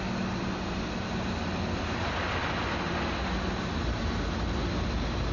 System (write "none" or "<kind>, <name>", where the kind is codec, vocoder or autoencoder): none